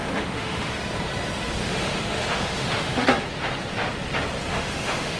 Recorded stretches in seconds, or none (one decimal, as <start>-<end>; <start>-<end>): 0.7-1.6; 3.1-4.5